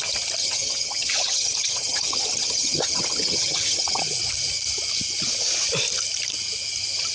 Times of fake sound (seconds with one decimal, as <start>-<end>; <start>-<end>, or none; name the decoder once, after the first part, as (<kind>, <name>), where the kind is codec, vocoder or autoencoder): 0.4-4.0 (vocoder, HiFi-GAN)